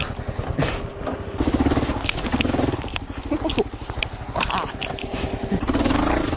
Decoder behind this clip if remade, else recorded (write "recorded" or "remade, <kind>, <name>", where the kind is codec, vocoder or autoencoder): recorded